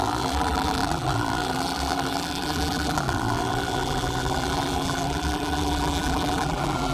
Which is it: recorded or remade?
remade